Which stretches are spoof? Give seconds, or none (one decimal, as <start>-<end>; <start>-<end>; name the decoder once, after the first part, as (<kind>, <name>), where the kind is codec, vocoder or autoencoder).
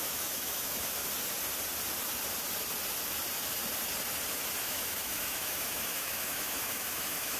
0.0-1.0 (autoencoder, DAC-VAE); 4.6-7.4